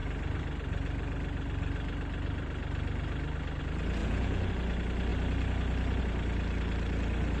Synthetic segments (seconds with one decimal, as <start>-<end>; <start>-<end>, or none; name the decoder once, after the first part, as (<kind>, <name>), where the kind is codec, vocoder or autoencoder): 4.0-4.5 (vocoder, Vocos)